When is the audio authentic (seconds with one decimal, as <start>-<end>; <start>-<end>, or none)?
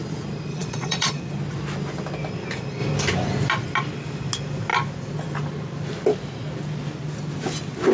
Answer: 0.0-0.5; 1.2-7.9